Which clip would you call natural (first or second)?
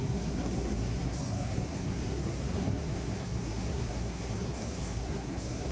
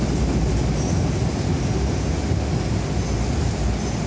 second